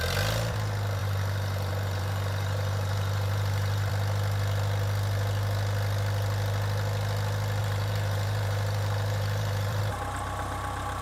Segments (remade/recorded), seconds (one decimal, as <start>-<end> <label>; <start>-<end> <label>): 0.0-1.0 recorded; 1.0-3.9 remade; 3.9-7.6 recorded; 7.6-9.8 remade; 9.8-11.0 recorded